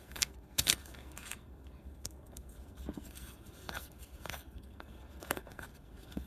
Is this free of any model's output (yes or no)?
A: no